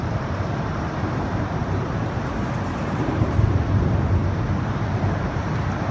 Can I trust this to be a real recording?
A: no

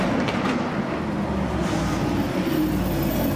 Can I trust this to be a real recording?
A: yes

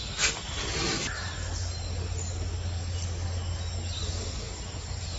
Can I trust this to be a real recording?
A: yes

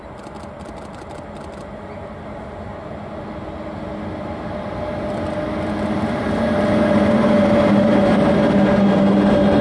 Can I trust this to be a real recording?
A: yes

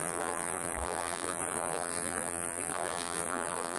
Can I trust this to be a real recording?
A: no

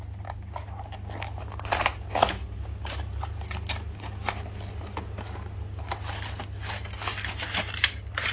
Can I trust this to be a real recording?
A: yes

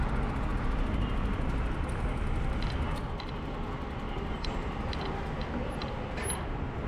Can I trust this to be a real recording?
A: yes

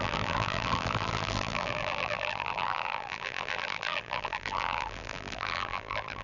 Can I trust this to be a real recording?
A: no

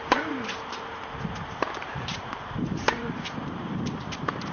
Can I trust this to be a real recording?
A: no